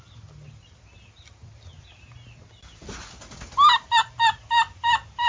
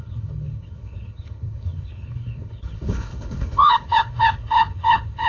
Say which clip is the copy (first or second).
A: second